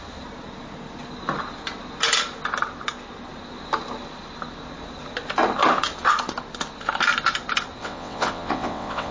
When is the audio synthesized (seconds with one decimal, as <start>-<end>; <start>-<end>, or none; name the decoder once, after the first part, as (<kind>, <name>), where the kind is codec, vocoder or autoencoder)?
7.8-9.1 (vocoder, WaveNeXt)